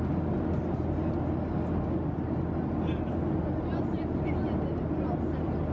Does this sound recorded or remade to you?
recorded